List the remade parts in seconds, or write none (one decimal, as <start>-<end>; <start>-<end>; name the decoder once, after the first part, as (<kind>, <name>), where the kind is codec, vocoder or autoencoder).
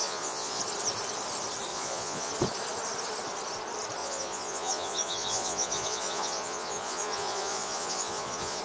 0.0-0.6 (vocoder, Vocos); 1.7-2.3; 4.0-8.6